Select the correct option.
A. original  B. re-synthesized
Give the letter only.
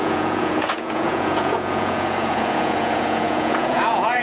B